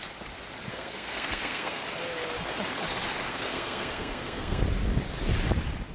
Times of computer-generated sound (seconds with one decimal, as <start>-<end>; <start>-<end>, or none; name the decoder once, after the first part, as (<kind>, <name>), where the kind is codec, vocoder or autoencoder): 0.7-1.8 (codec, SNAC); 3.3-4.6